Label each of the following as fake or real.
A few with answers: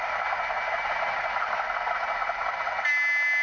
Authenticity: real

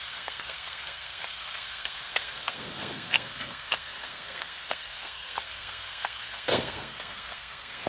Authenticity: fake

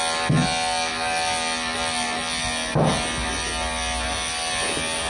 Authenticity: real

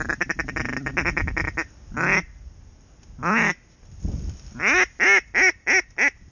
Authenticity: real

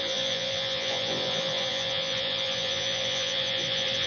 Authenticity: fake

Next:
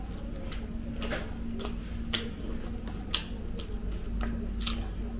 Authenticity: real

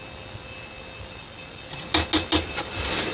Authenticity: real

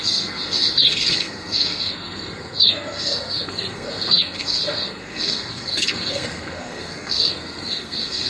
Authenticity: fake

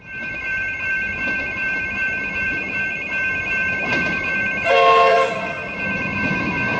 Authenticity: fake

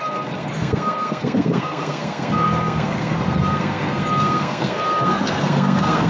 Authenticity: fake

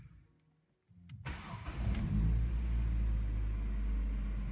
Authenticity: real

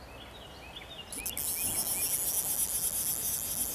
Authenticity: real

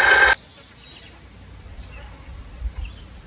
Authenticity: real